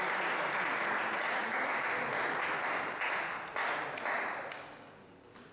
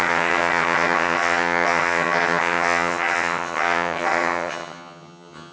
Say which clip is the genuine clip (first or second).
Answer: first